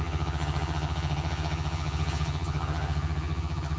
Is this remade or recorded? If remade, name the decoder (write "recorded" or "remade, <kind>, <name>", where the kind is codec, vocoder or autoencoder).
remade, vocoder, HiFi-GAN